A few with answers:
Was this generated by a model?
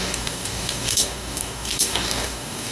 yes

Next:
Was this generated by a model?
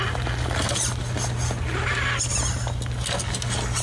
no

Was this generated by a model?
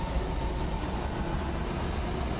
no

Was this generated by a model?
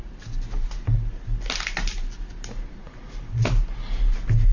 no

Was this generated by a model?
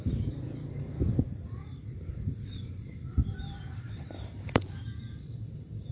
yes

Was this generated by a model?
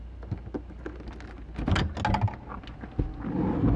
no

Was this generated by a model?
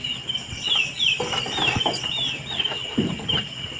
no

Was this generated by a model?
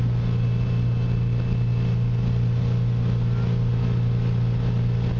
no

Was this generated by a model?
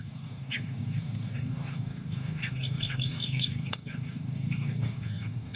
yes